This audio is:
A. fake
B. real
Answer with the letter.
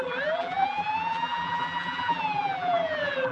A